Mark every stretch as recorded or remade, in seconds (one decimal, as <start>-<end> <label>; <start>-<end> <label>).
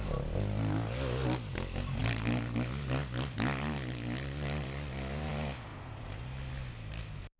0.0-7.4 recorded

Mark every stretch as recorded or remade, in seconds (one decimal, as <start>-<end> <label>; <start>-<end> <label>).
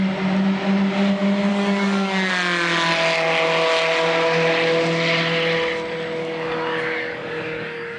0.0-1.5 recorded; 1.5-2.3 remade; 2.3-6.2 recorded; 6.2-8.0 remade